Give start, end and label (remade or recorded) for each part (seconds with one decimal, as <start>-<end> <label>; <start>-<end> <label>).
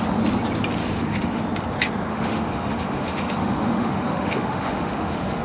0.0-0.8 recorded; 0.8-1.4 remade; 1.4-2.1 recorded; 2.1-5.4 remade